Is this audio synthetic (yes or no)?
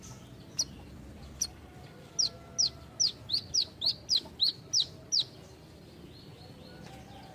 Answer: no